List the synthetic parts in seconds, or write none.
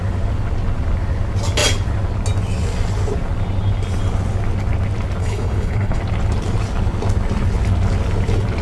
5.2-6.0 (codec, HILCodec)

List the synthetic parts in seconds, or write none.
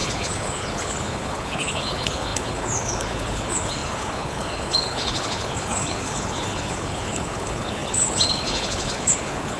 0.0-9.6 (codec, HILCodec)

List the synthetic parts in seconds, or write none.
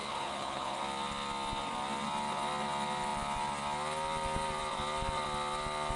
0.0-0.8 (codec, HILCodec)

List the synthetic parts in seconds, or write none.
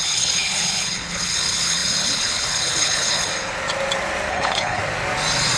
0.0-3.3 (codec, HILCodec); 4.3-4.8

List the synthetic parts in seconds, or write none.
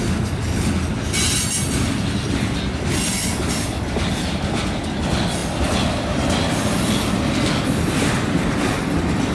none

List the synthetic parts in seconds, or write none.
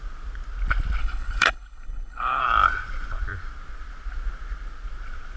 1.0-2.4 (codec, HILCodec)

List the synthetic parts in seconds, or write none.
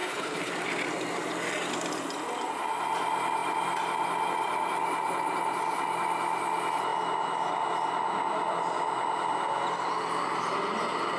0.0-0.5 (codec, HILCodec)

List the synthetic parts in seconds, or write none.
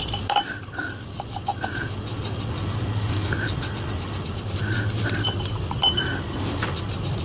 none